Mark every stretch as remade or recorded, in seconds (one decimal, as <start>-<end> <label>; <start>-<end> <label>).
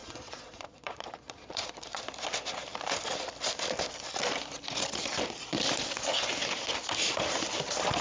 0.0-2.0 remade; 2.0-8.0 recorded